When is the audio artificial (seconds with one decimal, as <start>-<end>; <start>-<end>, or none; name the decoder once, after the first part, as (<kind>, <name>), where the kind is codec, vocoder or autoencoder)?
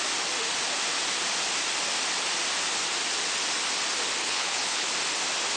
4.2-4.9 (codec, HILCodec)